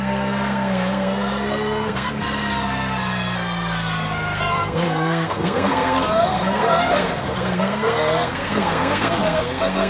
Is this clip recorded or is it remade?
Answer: remade